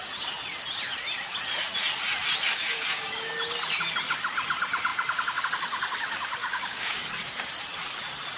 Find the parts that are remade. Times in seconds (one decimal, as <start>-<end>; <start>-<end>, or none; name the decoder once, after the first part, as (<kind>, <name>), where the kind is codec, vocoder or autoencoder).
2.6-3.3 (codec, DAC); 6.4-7.0